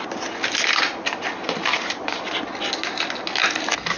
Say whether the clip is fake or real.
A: real